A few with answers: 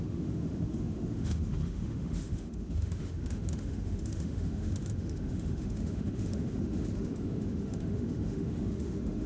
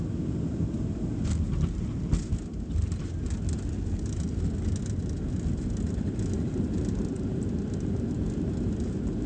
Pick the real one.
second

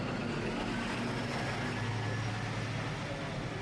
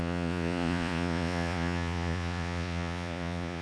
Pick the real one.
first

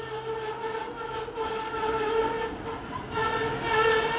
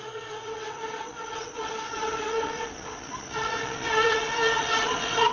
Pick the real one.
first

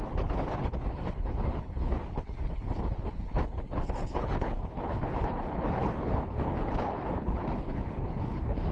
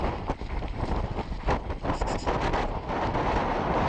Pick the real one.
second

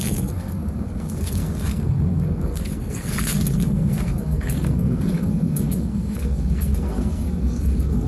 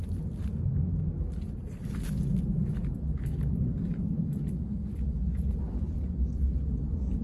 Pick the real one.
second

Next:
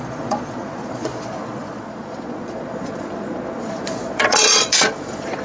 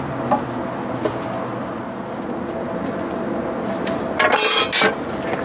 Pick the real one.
second